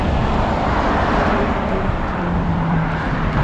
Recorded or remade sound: remade